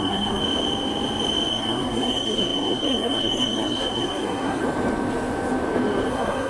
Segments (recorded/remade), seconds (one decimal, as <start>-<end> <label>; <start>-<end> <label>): 0.0-0.4 remade; 0.4-1.5 recorded; 1.5-4.6 remade; 4.6-6.1 recorded; 6.1-6.5 remade